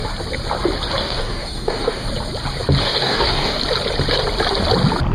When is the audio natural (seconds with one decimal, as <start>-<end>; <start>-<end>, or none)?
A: 0.0-1.0; 2.1-2.8; 3.6-5.1

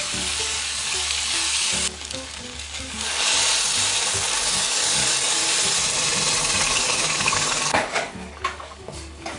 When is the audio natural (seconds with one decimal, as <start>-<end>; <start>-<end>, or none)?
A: 3.4-4.0; 5.4-6.4

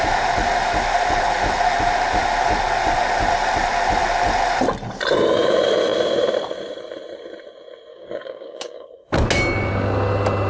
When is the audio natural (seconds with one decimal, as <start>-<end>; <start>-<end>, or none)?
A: 0.0-7.9; 8.9-10.5

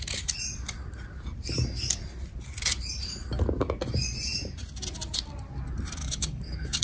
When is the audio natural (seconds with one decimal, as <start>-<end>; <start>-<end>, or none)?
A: 0.0-6.0